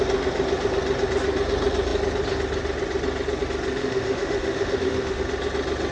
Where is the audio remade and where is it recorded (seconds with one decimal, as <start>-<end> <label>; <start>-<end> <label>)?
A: 0.0-3.8 recorded; 3.8-5.2 remade; 5.2-5.9 recorded